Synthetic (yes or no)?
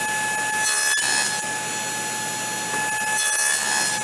no